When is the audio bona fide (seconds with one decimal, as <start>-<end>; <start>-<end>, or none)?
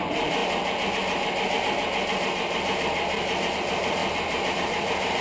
0.4-3.5; 4.0-4.5